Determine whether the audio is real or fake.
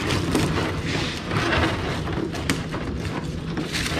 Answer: fake